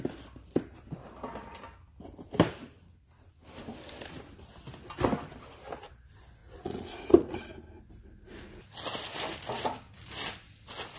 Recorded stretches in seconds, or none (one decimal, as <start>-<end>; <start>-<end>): 0.0-6.4; 7.4-11.0